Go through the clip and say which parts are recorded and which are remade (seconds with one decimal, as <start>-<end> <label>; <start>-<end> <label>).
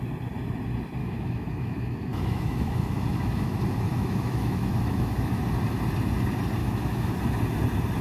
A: 0.0-1.0 recorded; 1.0-5.4 remade; 5.4-6.6 recorded; 6.6-7.2 remade; 7.2-8.0 recorded